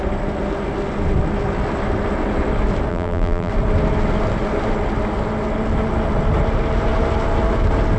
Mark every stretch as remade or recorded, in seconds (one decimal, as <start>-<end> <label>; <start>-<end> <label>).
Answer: 0.0-2.9 recorded; 2.9-3.5 remade; 3.5-8.0 recorded